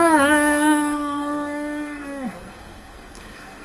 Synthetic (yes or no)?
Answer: yes